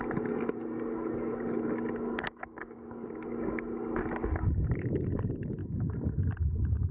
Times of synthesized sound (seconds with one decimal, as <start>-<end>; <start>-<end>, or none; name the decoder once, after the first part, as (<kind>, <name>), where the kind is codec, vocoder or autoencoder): 2.1-3.1 (codec, DAC); 5.6-6.3